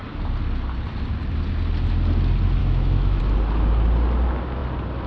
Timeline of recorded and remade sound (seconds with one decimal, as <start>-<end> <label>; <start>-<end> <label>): 0.0-2.6 recorded; 2.6-3.2 remade; 3.2-5.1 recorded